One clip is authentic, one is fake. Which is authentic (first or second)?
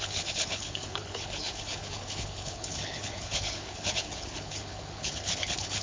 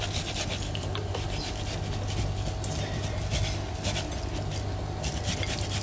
second